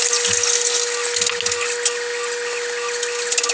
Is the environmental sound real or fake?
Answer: real